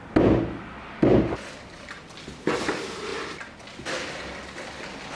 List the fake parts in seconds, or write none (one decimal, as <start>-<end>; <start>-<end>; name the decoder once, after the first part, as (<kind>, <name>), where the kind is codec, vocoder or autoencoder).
1.1-2.2 (vocoder, BigVGAN v2)